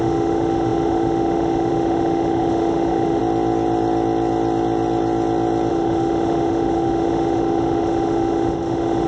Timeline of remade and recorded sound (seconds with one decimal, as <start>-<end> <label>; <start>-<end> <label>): 0.0-3.2 remade; 3.2-5.7 recorded; 5.7-9.1 remade